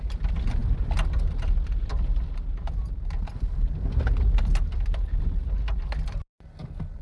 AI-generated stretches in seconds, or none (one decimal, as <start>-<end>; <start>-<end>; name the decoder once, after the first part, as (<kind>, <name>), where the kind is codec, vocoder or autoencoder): none